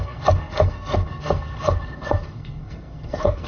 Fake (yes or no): yes